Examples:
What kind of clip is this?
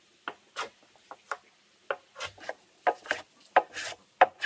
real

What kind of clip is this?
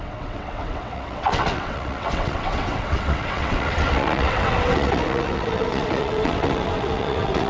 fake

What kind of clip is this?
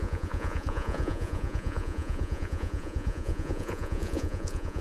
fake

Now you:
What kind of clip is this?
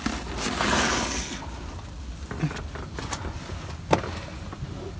real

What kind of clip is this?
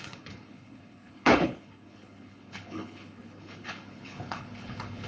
fake